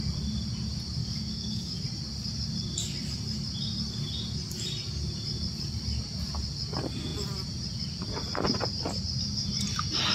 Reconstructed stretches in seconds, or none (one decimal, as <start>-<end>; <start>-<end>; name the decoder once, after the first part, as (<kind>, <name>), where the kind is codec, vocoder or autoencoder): 1.0-1.8 (codec, DAC)